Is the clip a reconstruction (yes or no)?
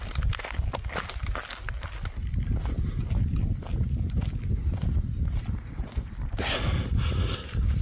no